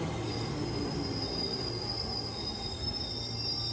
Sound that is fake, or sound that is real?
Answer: real